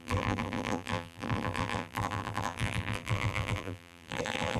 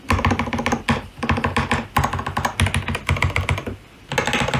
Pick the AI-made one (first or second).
first